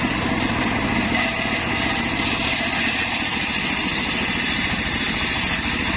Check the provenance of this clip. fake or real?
real